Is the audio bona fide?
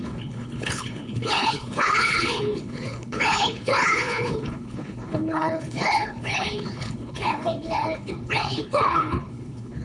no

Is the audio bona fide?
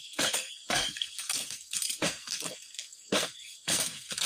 no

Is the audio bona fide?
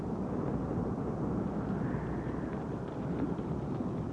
yes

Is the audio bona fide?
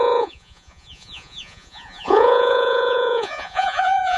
no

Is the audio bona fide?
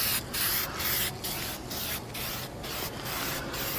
yes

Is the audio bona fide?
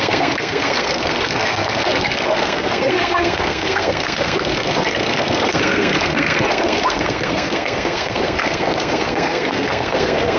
no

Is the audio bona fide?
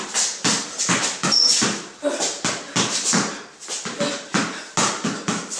yes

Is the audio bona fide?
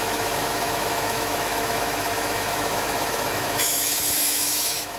no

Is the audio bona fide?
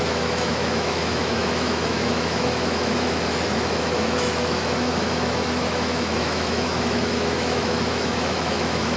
no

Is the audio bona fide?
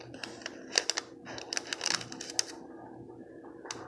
yes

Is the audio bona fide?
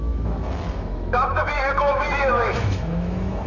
no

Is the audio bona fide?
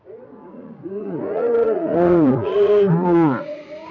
no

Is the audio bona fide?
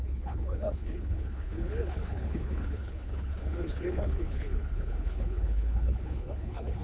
no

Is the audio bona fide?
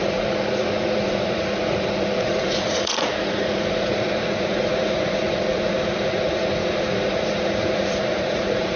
no